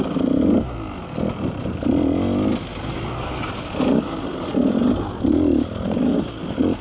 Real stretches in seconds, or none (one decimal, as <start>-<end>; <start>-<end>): 0.0-6.8